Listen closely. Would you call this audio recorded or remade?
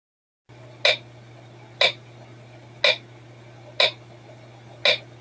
recorded